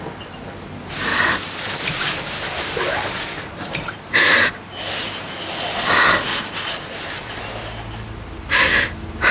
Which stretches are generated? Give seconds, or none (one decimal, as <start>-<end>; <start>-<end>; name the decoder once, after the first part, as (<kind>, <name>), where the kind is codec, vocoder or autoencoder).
1.1-5.0 (vocoder, BigVGAN v2); 6.3-7.4